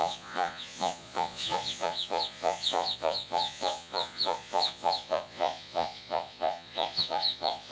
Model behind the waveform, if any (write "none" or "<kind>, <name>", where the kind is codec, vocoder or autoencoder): vocoder, Vocos